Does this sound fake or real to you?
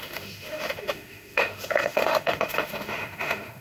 fake